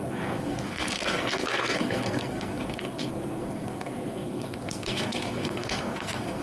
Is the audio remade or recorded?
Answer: remade